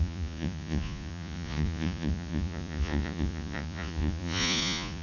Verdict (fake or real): fake